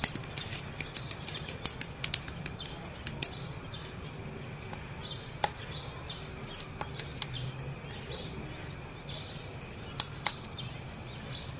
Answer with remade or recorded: recorded